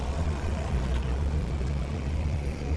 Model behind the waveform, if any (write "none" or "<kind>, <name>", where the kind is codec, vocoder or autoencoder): vocoder, Vocos